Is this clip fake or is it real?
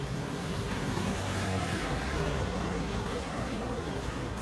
fake